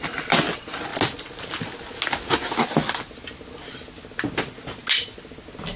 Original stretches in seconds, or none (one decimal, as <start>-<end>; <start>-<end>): 0.0-5.8

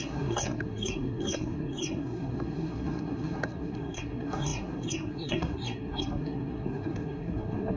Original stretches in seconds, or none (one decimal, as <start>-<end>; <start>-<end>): none